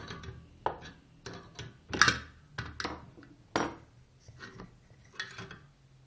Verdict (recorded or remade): recorded